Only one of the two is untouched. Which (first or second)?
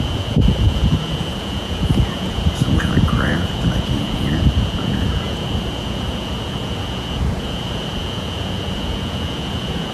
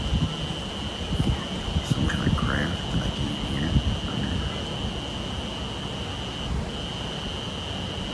second